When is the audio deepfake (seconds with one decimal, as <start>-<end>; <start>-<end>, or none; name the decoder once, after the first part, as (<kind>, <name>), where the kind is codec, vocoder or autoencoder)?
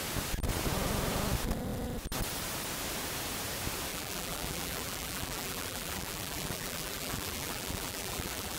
3.9-8.6 (vocoder, BigVGAN v2)